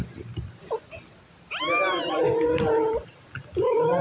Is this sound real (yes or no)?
yes